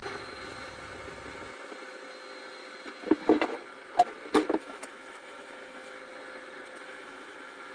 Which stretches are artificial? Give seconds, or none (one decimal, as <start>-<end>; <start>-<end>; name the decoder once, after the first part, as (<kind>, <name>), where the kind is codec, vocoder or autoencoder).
4.6-6.0 (autoencoder, DAC-VAE); 6.8-7.7